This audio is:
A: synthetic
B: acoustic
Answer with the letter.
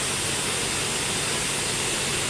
B